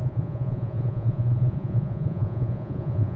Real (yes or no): no